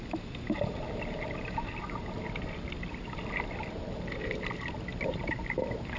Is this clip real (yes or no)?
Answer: yes